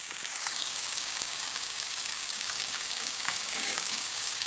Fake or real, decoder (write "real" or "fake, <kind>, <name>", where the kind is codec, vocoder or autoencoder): fake, codec, DAC